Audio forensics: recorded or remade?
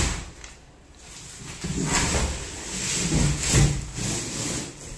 recorded